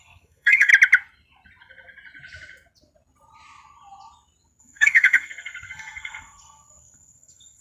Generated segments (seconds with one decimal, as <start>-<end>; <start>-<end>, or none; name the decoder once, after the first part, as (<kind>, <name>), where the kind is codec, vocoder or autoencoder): 0.0-0.7 (codec, SNAC); 4.6-7.6